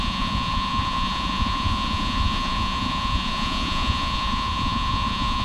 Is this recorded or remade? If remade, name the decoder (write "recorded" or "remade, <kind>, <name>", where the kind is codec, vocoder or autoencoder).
remade, vocoder, Vocos